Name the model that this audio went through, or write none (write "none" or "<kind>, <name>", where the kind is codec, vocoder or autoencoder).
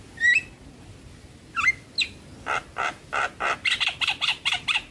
none